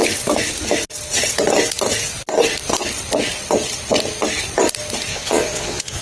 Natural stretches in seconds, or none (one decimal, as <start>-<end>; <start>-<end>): 0.0-5.1